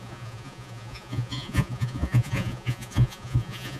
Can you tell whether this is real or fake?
fake